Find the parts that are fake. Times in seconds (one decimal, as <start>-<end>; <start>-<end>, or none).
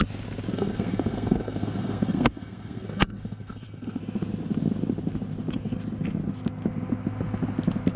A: 0.5-4.0